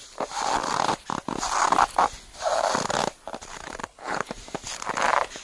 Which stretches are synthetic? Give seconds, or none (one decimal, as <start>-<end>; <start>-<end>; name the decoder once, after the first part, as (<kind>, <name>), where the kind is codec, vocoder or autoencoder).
3.8-4.3 (codec, HILCodec)

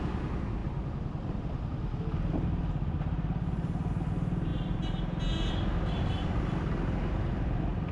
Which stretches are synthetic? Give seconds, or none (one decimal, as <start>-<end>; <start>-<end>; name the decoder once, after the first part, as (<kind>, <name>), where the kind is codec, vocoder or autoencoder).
none

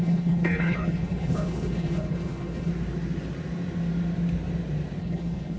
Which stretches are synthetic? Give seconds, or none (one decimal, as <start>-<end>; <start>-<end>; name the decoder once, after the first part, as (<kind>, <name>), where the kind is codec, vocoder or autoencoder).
0.0-2.7 (codec, HILCodec); 5.0-5.6

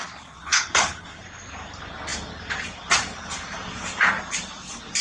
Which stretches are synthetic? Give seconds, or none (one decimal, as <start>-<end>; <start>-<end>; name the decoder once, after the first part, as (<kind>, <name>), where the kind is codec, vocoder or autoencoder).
0.4-1.2 (codec, HILCodec)

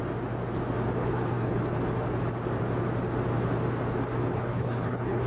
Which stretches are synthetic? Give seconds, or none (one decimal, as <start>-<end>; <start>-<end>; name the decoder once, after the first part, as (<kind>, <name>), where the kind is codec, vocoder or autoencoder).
1.0-1.6 (codec, HILCodec); 4.3-5.3

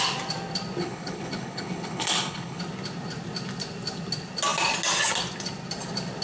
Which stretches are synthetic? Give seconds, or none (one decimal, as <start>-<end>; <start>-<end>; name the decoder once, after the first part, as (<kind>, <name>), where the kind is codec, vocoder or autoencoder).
0.8-2.6 (codec, HILCodec)

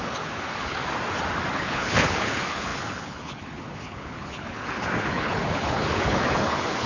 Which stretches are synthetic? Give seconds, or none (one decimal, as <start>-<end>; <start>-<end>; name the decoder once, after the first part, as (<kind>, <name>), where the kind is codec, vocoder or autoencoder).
0.0-0.8 (codec, HILCodec); 1.5-6.9